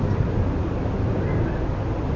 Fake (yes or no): yes